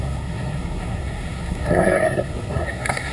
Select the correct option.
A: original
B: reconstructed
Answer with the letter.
B